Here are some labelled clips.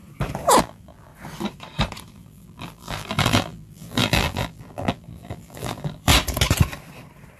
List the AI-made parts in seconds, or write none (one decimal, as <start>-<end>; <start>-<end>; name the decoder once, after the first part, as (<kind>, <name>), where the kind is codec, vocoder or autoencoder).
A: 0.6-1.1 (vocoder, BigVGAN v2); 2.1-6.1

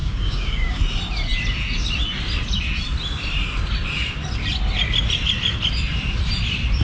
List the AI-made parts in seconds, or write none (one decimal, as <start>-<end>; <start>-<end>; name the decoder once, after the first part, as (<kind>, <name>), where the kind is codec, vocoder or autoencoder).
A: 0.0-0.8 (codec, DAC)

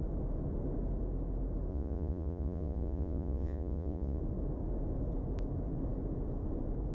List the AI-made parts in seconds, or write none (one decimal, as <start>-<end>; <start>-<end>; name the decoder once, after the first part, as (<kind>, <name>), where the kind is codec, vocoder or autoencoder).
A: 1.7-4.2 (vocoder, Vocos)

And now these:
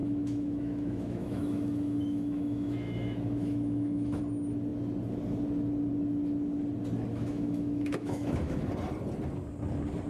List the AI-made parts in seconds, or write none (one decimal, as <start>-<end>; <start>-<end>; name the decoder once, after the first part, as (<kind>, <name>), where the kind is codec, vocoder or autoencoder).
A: 0.0-4.2 (autoencoder, DAC-VAE); 7.1-8.7

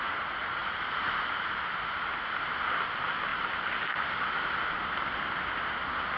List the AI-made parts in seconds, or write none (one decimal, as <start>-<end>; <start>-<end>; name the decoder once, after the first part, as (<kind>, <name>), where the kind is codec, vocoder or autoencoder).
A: none